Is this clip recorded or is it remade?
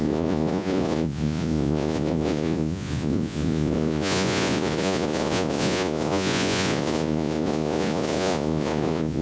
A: remade